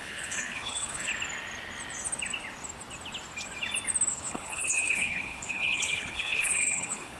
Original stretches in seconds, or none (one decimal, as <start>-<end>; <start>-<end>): 1.1-4.1